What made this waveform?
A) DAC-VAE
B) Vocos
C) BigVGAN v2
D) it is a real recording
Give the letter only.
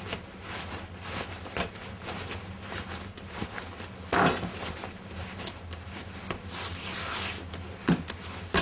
D